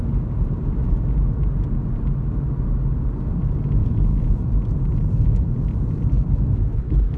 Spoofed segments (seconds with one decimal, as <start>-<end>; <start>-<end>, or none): 3.8-4.5